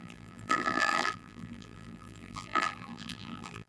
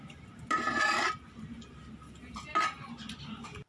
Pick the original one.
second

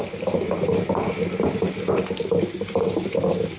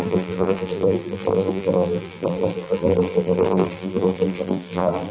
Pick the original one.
first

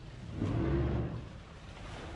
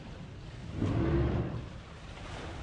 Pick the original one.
first